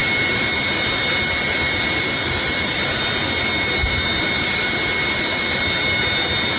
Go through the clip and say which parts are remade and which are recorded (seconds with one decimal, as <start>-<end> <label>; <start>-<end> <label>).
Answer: 0.0-6.6 recorded